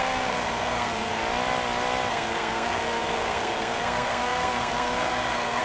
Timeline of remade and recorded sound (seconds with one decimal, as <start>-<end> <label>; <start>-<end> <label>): 0.0-1.2 remade; 1.2-2.1 recorded; 2.1-5.6 remade